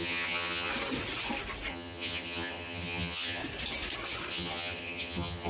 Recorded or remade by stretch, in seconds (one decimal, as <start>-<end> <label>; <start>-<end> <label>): 0.0-0.7 remade; 0.7-1.7 recorded; 1.7-3.4 remade; 3.4-4.3 recorded; 4.3-5.5 remade